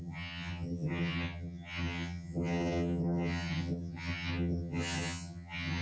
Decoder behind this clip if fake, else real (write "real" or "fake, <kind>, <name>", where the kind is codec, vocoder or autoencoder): fake, vocoder, HiFi-GAN